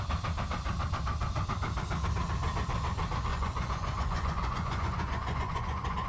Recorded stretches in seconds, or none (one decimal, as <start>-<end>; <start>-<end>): 0.0-3.3